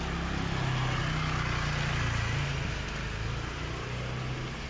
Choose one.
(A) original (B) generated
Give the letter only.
A